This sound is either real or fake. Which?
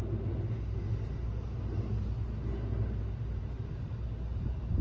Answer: real